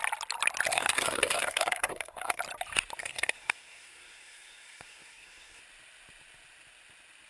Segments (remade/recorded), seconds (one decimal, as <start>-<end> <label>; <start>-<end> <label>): 0.0-0.7 recorded; 0.7-2.4 remade; 2.4-3.0 recorded; 3.0-5.6 remade; 5.6-7.3 recorded